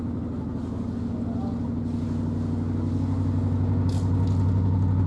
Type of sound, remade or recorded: recorded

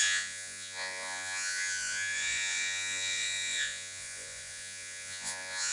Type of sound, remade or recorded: remade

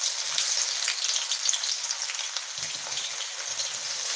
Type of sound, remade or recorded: recorded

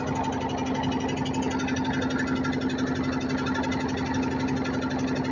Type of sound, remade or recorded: recorded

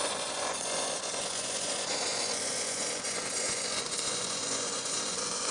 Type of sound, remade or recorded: remade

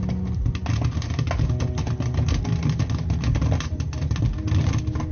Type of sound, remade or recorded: recorded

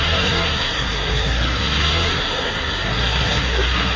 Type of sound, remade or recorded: remade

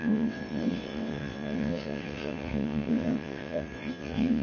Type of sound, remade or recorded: remade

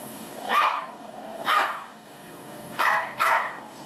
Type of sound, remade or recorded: remade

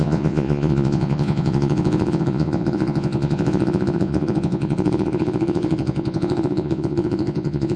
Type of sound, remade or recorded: remade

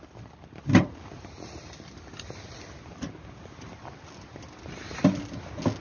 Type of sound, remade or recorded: recorded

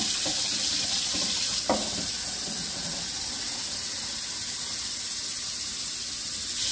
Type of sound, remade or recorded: recorded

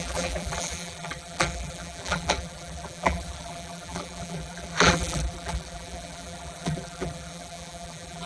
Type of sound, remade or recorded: remade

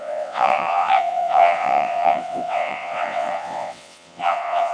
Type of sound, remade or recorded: remade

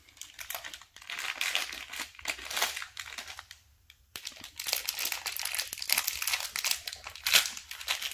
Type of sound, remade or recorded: recorded